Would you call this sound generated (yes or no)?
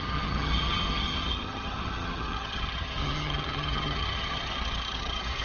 yes